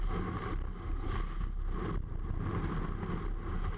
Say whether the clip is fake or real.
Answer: real